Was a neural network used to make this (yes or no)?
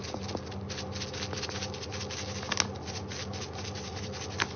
no